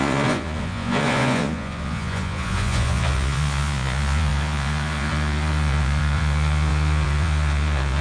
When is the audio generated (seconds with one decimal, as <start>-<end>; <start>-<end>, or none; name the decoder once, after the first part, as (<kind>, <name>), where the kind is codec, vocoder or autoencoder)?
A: 0.0-8.0 (vocoder, Vocos)

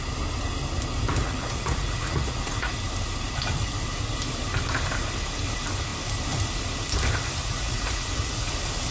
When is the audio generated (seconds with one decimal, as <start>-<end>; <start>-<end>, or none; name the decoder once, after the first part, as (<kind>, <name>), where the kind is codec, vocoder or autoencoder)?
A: 1.2-2.7 (vocoder, Vocos); 7.4-8.5